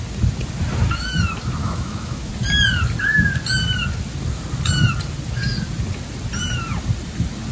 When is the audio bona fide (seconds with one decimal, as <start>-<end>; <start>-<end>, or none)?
0.0-1.6; 2.3-7.5